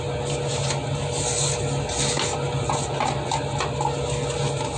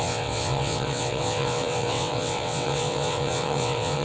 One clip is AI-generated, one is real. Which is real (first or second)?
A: first